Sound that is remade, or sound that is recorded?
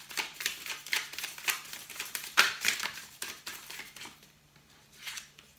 remade